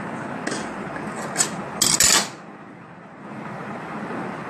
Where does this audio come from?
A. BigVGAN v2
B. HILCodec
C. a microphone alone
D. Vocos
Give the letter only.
C